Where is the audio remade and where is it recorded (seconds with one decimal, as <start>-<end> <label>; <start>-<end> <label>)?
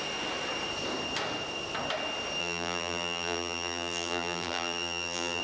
0.0-2.4 recorded; 2.4-5.4 remade